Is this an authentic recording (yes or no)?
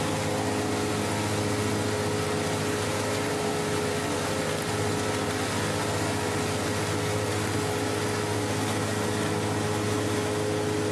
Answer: yes